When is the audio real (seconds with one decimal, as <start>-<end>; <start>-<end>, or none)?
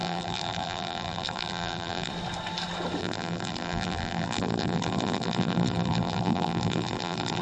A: 2.1-3.0